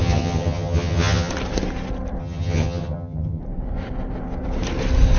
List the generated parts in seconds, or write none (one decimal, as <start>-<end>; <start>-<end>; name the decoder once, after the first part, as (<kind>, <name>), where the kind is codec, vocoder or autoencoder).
0.0-1.3 (vocoder, HiFi-GAN); 2.2-3.4